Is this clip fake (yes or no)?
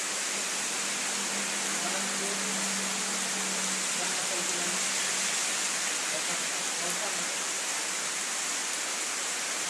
no